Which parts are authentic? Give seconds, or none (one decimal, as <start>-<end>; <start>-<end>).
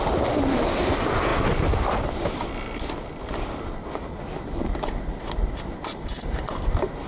0.0-7.1